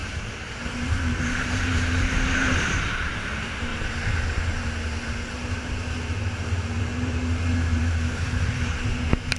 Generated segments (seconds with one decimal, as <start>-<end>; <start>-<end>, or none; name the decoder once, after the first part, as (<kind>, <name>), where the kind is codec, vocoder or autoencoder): 0.0-9.4 (vocoder, BigVGAN v2)